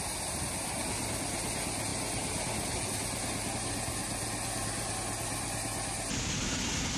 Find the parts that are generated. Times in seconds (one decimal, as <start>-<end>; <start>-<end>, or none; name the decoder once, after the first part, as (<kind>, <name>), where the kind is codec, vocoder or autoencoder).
none